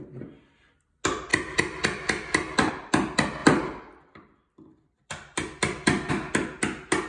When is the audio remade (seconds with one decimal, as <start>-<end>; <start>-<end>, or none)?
1.3-2.7; 3.4-6.1